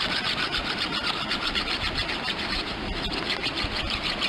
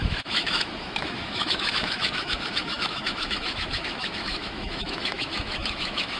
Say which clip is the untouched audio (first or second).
first